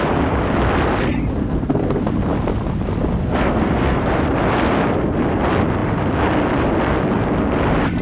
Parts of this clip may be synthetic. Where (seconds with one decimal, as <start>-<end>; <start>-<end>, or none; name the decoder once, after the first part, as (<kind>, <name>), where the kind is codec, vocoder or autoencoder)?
1.4-2.0 (codec, SNAC); 3.2-4.1